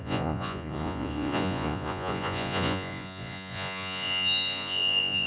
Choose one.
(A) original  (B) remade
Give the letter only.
B